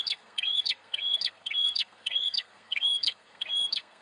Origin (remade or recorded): remade